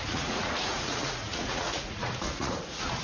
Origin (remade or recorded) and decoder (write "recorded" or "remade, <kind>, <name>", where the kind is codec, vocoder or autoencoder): remade, vocoder, Vocos